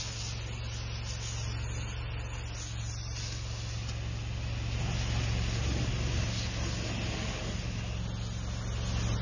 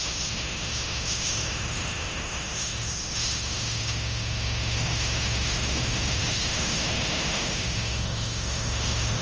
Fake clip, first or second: second